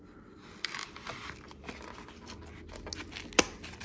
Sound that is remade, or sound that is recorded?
recorded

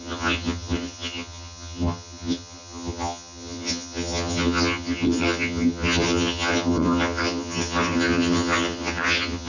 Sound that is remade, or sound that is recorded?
remade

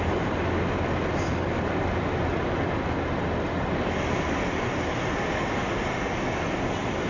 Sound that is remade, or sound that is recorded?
recorded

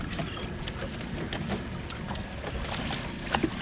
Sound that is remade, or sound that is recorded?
recorded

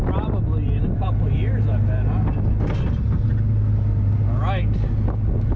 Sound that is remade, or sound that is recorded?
recorded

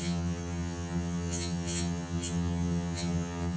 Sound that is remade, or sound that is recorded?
remade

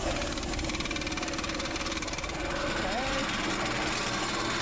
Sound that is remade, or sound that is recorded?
recorded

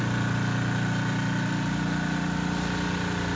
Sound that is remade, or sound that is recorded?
recorded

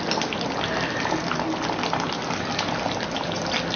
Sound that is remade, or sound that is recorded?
recorded